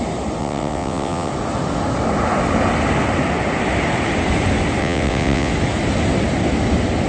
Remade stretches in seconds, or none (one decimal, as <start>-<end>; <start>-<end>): 0.4-1.3; 4.8-5.5